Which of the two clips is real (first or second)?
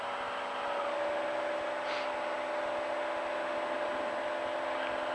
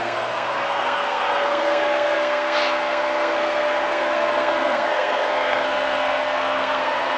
first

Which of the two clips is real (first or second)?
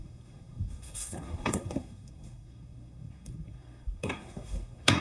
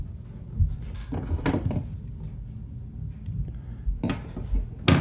second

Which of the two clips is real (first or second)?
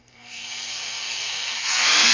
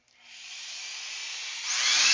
second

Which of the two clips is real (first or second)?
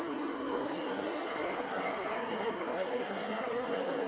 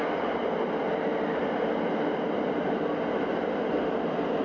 second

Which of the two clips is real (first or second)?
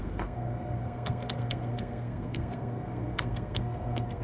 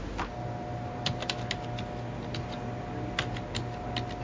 second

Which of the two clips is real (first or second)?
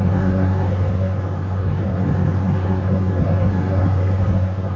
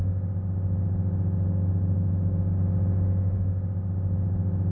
second